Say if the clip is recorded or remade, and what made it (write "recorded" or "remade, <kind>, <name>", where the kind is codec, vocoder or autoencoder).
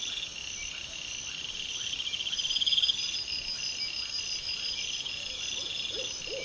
recorded